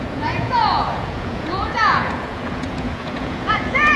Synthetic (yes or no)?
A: yes